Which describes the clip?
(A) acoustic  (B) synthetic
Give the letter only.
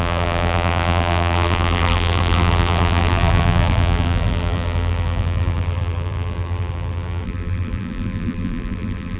B